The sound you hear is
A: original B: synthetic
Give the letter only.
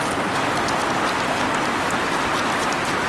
A